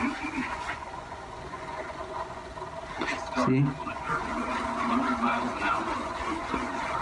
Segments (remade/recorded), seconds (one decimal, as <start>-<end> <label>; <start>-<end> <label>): 0.0-2.5 remade; 2.5-3.9 recorded; 3.9-4.4 remade; 4.4-4.9 recorded; 4.9-7.0 remade